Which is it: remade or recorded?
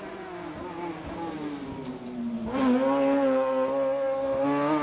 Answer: recorded